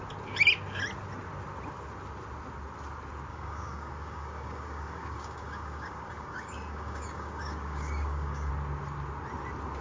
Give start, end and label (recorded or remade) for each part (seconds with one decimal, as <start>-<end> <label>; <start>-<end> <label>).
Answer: 0.0-3.3 recorded; 3.3-8.5 remade; 8.5-9.8 recorded